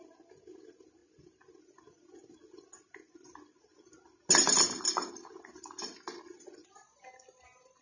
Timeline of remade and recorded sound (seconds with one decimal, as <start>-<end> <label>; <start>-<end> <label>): 0.0-7.8 recorded